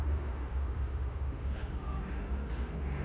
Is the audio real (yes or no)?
no